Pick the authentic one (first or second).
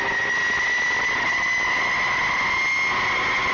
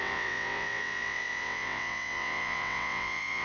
first